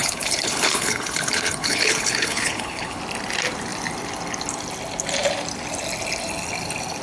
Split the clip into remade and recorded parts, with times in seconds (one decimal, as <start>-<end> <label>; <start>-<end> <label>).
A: 0.0-3.0 remade; 3.0-7.0 recorded